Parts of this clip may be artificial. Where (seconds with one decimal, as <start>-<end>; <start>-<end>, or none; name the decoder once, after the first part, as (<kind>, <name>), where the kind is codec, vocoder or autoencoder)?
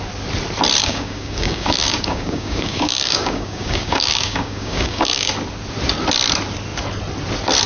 0.8-5.3 (codec, DAC)